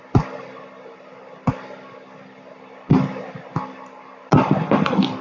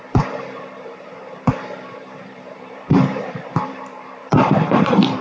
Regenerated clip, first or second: second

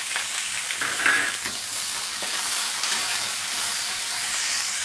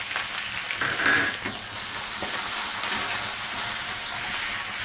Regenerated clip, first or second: first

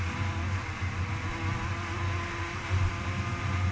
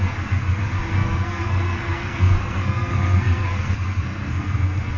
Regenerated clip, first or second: second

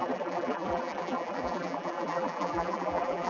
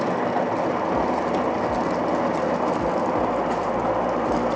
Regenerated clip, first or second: first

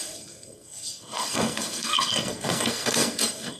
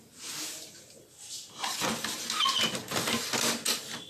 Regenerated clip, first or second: first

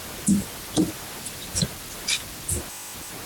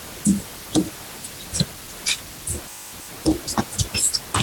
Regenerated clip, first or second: second